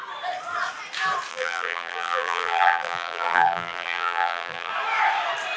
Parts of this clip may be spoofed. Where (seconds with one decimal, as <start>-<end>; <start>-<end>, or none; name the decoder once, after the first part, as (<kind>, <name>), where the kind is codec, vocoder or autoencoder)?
1.3-4.7 (vocoder, BigVGAN v2)